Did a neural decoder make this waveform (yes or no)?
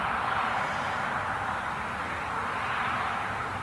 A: no